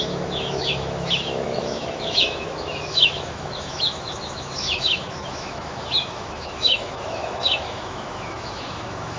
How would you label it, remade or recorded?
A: remade